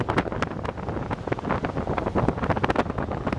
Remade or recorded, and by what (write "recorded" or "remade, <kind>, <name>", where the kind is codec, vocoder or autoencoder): recorded